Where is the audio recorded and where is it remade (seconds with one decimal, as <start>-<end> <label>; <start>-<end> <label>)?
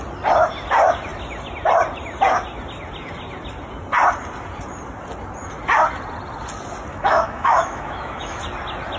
0.0-6.9 recorded; 6.9-8.4 remade; 8.4-9.0 recorded